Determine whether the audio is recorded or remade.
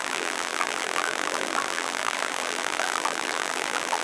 remade